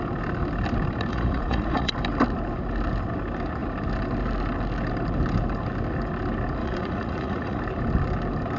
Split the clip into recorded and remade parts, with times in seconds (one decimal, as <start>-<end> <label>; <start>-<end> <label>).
0.0-1.1 recorded; 1.1-1.9 remade; 1.9-6.6 recorded; 6.6-7.6 remade; 7.6-8.6 recorded